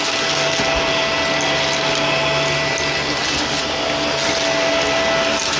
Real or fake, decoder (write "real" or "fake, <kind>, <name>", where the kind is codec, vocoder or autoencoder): real